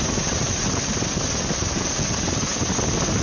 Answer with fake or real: real